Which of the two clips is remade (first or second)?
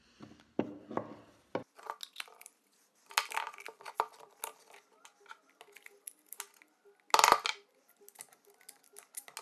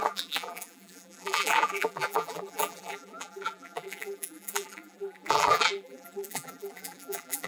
second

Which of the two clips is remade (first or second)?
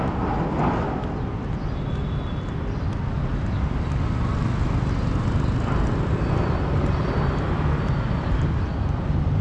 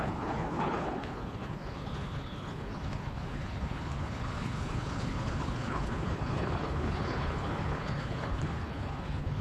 second